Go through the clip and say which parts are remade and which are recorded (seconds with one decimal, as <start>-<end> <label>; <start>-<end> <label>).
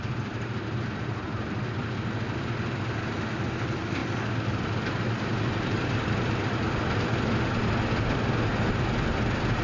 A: 0.0-9.6 recorded